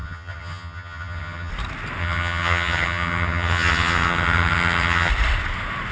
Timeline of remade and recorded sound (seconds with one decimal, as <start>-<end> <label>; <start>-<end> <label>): 0.0-1.5 remade; 1.5-2.0 recorded; 2.0-5.1 remade; 5.1-5.9 recorded